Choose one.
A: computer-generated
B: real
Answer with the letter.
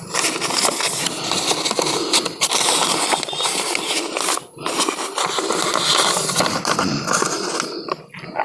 B